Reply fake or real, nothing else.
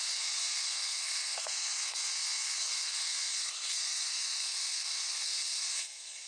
fake